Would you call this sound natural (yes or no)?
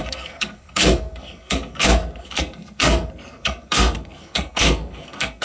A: no